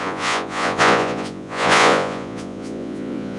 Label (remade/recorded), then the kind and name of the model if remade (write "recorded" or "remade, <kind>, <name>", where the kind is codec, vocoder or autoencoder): remade, vocoder, Vocos